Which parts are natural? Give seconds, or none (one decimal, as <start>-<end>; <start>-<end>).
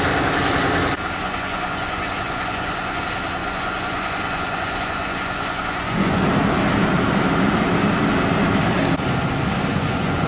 0.0-1.2; 3.0-3.4; 6.2-9.7